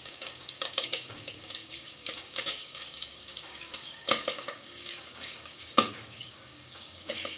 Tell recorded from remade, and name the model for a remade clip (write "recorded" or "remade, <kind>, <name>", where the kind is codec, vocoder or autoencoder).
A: remade, codec, DAC